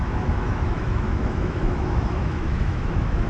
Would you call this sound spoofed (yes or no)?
yes